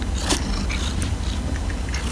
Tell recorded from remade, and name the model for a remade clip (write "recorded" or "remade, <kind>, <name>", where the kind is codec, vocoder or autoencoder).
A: recorded